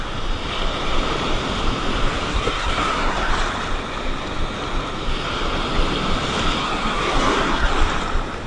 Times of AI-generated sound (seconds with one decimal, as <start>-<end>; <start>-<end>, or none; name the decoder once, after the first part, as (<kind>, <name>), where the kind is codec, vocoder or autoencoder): 2.3-3.3 (codec, SNAC); 6.6-7.7